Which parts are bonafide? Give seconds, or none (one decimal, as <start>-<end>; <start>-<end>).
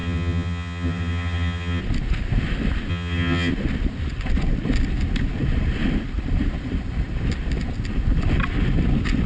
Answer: 1.8-2.9; 3.5-9.3